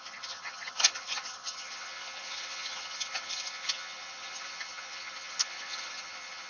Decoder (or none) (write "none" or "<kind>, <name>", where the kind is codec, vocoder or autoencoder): vocoder, HiFi-GAN